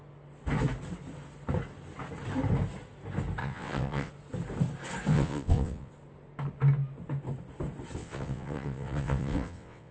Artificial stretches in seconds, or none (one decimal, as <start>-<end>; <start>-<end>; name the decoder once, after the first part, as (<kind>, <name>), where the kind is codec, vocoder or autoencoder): 3.4-4.1 (vocoder, WaveNeXt); 5.1-5.9; 8.0-9.9